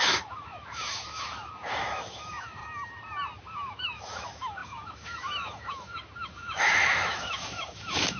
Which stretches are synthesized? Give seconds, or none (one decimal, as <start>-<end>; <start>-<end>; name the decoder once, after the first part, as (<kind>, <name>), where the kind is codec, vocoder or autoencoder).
0.0-2.6 (autoencoder, DAC-VAE); 3.4-8.2